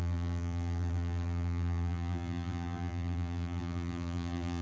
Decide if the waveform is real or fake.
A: fake